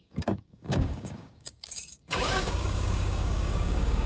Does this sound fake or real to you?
fake